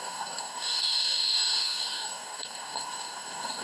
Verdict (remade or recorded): remade